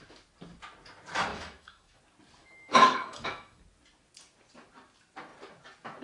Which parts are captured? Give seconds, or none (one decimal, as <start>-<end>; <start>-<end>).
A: 0.0-1.3; 2.0-2.4; 3.6-6.0